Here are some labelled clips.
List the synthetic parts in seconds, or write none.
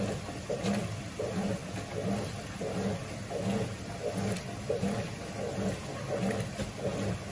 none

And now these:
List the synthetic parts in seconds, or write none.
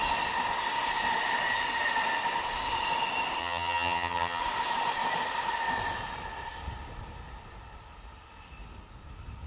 3.4-4.4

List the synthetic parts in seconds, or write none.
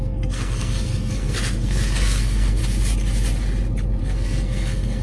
0.0-2.6; 4.0-5.0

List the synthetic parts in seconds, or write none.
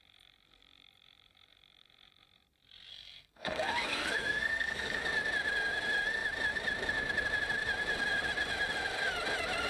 2.9-5.0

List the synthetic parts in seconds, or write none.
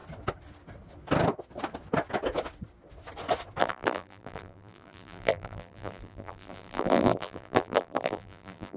3.6-8.8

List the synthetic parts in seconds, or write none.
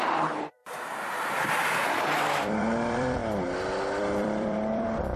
0.0-0.6; 1.5-3.2; 4.0-5.2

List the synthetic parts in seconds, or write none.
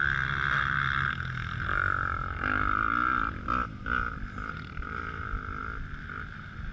none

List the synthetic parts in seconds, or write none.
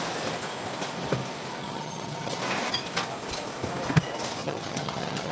1.6-2.4; 4.4-5.3